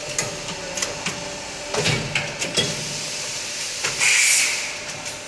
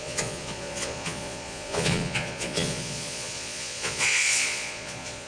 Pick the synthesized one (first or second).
second